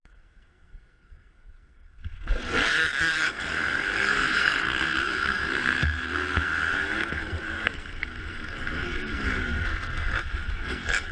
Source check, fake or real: fake